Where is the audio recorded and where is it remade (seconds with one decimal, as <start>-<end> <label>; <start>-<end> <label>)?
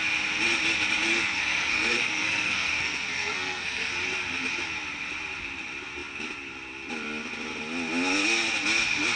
0.0-1.1 recorded; 1.1-3.9 remade; 3.9-9.2 recorded